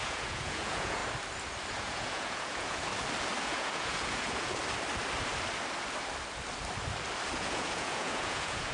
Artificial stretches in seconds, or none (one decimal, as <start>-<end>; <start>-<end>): 0.0-1.0; 1.7-2.9; 3.4-4.6; 7.3-8.7